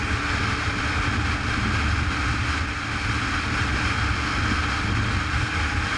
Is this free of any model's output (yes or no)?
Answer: yes